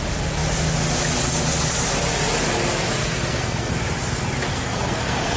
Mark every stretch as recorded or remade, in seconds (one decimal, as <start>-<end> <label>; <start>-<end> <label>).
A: 0.0-3.0 recorded; 3.0-3.7 remade; 3.7-4.5 recorded; 4.5-5.4 remade